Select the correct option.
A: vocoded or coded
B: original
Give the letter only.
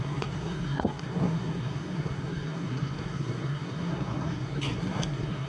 A